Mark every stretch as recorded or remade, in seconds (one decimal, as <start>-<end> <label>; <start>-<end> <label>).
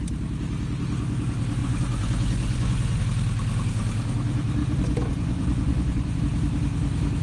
0.0-1.6 recorded; 1.6-3.0 remade; 3.0-4.6 recorded; 4.6-6.2 remade; 6.2-7.2 recorded